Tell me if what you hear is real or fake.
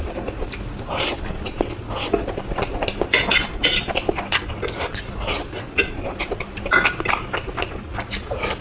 real